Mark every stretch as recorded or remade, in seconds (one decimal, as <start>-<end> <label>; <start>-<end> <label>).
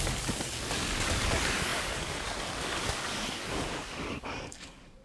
0.0-5.0 remade